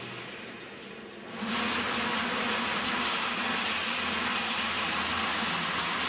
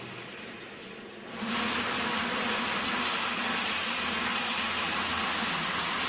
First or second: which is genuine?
first